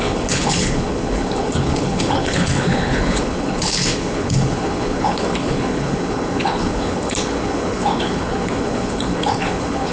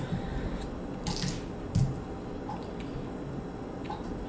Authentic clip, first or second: second